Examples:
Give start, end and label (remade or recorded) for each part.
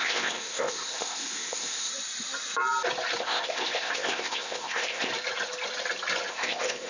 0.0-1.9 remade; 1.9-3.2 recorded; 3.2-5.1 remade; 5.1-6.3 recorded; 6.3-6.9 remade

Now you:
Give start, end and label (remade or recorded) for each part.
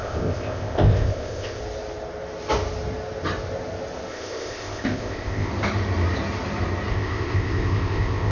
0.0-1.6 remade; 1.6-4.1 recorded; 4.1-5.5 remade; 5.5-6.9 recorded; 6.9-8.3 remade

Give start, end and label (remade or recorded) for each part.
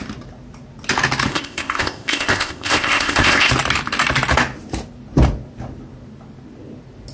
0.0-1.3 recorded; 1.3-3.5 remade; 3.5-7.1 recorded